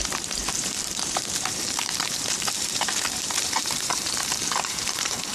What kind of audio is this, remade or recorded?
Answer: remade